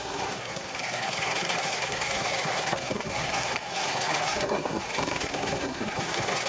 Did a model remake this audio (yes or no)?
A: yes